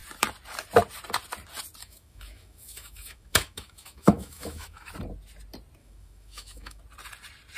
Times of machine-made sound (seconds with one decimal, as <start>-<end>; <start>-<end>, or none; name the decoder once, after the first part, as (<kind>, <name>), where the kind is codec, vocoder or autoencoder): 1.8-4.9 (autoencoder, DAC-VAE); 5.8-6.8